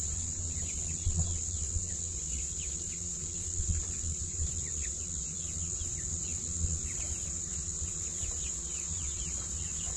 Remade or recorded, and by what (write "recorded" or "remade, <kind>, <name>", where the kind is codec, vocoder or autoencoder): remade, vocoder, Vocos